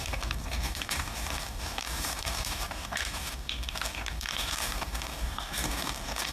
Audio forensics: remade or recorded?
remade